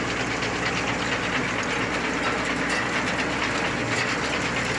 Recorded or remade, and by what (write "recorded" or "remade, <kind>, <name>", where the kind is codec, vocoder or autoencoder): recorded